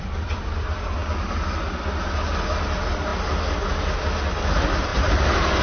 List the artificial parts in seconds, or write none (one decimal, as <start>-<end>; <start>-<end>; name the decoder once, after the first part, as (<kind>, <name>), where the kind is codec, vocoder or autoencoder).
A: none